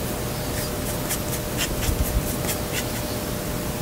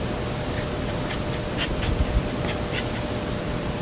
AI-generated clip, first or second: second